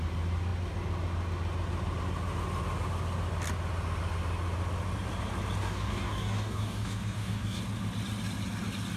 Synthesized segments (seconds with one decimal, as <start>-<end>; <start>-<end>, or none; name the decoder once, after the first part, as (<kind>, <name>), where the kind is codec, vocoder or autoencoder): 5.6-7.6 (codec, DAC)